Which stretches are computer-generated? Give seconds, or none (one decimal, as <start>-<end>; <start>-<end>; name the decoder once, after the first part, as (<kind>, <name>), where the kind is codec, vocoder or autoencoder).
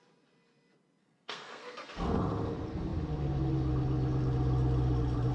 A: 1.0-2.2 (codec, SNAC)